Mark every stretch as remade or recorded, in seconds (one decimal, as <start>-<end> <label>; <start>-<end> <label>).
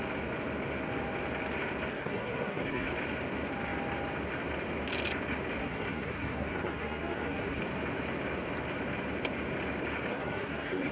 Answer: 0.0-1.9 recorded; 1.9-2.9 remade; 2.9-5.6 recorded; 5.6-7.6 remade; 7.6-10.1 recorded; 10.1-10.9 remade